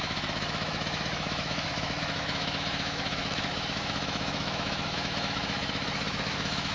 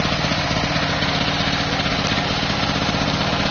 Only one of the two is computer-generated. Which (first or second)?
first